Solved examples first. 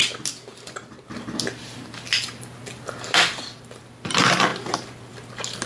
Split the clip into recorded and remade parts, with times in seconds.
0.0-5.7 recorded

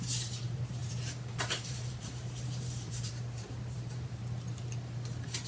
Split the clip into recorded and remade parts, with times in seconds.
0.0-4.2 remade; 4.2-5.5 recorded